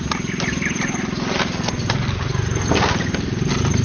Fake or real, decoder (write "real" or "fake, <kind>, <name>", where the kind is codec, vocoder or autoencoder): real